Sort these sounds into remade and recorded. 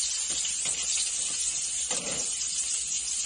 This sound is recorded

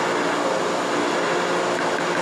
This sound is recorded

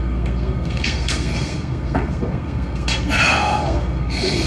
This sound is remade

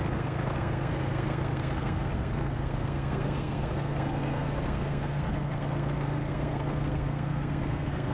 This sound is remade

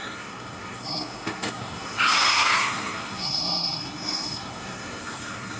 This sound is remade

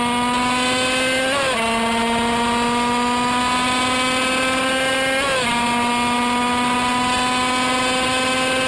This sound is recorded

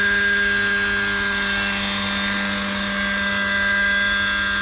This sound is recorded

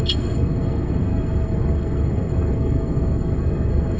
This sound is remade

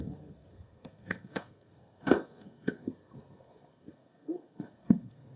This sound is remade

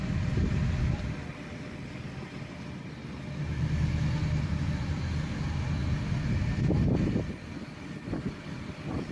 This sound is recorded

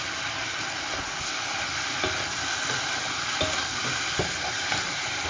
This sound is recorded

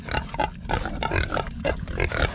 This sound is recorded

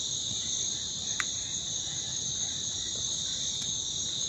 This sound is recorded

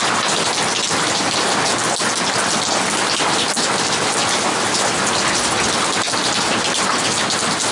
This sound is recorded